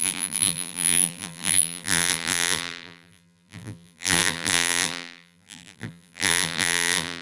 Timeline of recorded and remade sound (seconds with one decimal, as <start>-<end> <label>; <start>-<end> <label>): 0.0-7.2 remade